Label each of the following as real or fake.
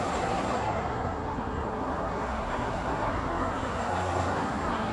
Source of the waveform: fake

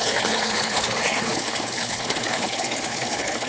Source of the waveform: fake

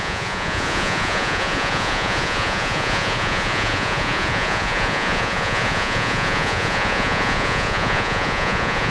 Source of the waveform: fake